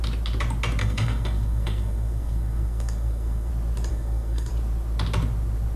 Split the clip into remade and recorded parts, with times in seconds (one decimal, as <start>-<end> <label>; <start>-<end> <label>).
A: 0.0-0.8 recorded; 0.8-3.5 remade; 3.5-3.9 recorded; 3.9-4.5 remade; 4.5-5.8 recorded